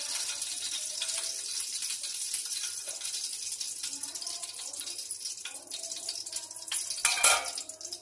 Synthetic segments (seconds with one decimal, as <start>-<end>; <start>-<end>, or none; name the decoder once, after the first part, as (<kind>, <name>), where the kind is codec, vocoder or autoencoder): none